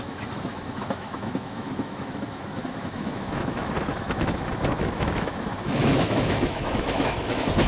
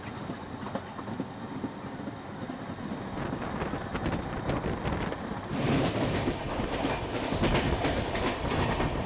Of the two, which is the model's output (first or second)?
first